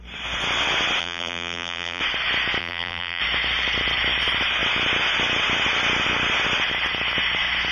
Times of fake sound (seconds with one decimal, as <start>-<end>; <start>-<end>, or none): 1.0-2.0; 2.6-3.2